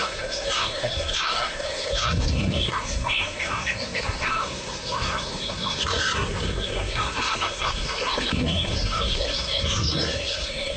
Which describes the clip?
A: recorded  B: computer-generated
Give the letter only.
B